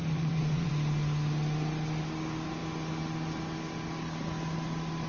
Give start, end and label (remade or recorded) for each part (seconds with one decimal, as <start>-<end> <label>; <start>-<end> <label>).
0.0-0.7 remade; 0.7-5.1 recorded